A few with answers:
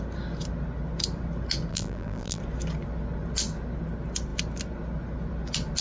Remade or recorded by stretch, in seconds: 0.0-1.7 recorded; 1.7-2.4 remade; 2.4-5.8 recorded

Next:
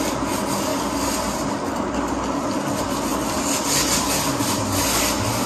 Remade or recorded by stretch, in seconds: 0.0-5.5 recorded

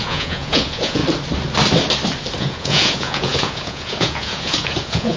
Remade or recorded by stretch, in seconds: 0.0-1.0 remade; 1.0-2.4 recorded; 2.4-5.2 remade